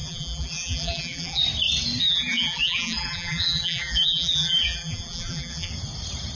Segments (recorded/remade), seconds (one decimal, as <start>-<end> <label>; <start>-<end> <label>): 0.0-1.4 remade; 1.4-2.0 recorded; 2.0-5.7 remade; 5.7-6.4 recorded

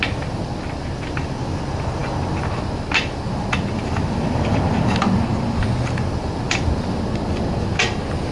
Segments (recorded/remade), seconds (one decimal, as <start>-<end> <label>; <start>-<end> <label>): 0.0-8.3 recorded

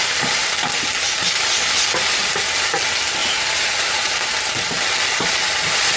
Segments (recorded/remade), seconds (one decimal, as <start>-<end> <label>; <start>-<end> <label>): 0.0-3.2 recorded; 3.2-4.1 remade; 4.1-6.0 recorded

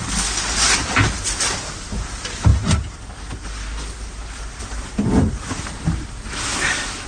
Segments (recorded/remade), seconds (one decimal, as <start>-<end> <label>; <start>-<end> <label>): 0.0-7.1 recorded

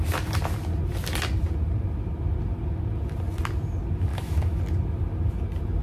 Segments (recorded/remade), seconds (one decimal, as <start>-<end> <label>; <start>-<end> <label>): 0.0-4.1 recorded; 4.1-4.6 remade; 4.6-5.8 recorded

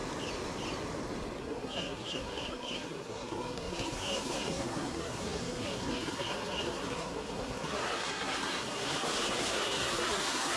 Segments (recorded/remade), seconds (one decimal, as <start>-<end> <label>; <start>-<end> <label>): 0.0-1.4 recorded; 1.4-10.6 remade